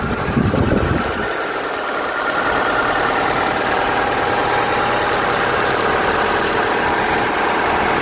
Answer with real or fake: fake